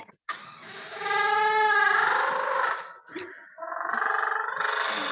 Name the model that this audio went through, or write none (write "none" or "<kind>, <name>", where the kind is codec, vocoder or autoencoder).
none